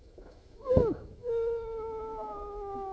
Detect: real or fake fake